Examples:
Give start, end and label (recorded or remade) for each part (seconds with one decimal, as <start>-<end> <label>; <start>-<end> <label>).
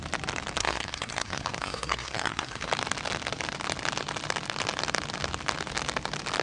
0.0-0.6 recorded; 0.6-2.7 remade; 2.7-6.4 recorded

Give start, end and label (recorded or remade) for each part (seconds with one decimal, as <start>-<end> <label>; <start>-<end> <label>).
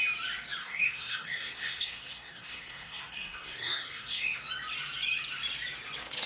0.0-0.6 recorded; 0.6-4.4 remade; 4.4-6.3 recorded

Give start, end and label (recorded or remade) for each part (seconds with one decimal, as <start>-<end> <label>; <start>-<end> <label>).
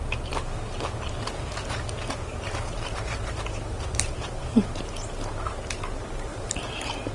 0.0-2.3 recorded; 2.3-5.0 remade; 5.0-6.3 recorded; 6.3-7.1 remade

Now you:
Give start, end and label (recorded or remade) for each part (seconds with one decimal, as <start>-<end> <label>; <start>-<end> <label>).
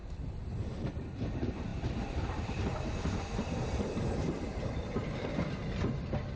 0.0-0.7 remade; 0.7-1.7 recorded; 1.7-5.3 remade; 5.3-6.4 recorded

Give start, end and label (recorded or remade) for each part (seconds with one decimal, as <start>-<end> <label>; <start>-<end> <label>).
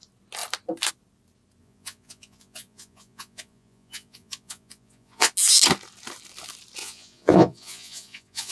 0.0-1.6 recorded; 1.6-5.3 remade; 5.3-6.8 recorded; 6.8-8.5 remade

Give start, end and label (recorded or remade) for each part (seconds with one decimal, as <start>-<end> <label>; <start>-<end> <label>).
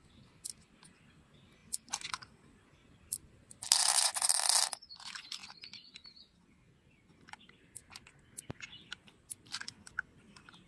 0.0-10.7 recorded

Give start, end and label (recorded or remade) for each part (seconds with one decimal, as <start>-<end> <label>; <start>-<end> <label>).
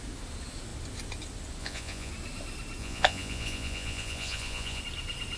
0.0-1.6 recorded; 1.6-2.1 remade; 2.1-2.8 recorded; 2.8-4.8 remade; 4.8-5.4 recorded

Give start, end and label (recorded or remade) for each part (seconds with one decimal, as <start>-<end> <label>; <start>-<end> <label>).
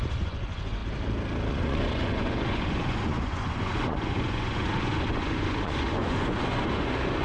0.0-0.8 remade; 0.8-1.5 recorded; 1.5-7.2 remade